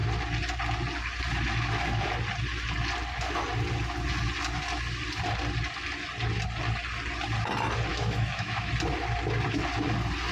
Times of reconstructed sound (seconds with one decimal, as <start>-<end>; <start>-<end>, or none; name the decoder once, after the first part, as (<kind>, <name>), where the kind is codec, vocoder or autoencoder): 7.9-8.7 (autoencoder, DAC-VAE)

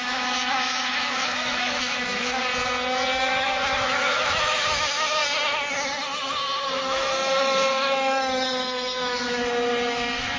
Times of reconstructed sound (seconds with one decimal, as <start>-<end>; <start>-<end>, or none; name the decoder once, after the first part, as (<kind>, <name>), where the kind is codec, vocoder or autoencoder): 0.0-2.5 (autoencoder, DAC-VAE); 3.2-5.2; 6.8-10.4

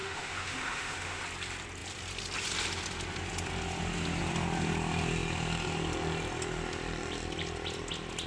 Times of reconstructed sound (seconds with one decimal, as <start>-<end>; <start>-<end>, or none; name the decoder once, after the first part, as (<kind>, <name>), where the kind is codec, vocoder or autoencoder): 0.0-1.2 (autoencoder, DAC-VAE)

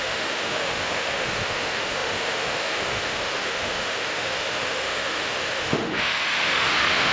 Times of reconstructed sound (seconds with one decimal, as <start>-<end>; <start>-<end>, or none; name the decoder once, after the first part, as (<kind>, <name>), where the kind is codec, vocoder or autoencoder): 0.0-7.1 (autoencoder, DAC-VAE)